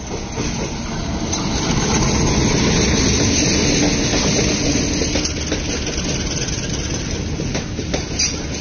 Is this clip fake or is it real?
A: real